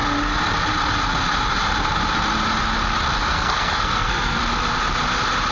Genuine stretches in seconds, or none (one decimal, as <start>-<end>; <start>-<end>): 0.0-3.3; 4.4-5.5